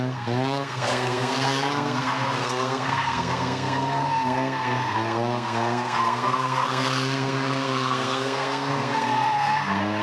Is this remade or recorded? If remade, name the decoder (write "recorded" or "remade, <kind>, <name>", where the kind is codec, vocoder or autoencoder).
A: remade, codec, SNAC